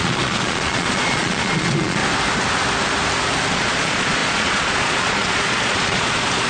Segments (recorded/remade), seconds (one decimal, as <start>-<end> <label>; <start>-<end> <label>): 0.0-2.0 remade; 2.0-3.5 recorded; 3.5-6.5 remade